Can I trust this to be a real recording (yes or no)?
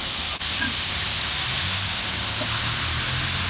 yes